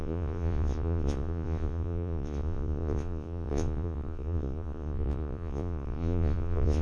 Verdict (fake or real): fake